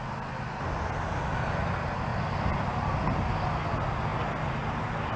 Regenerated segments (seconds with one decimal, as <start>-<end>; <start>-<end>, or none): none